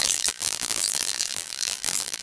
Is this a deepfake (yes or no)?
yes